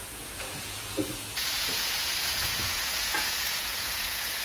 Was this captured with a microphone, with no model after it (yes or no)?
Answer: no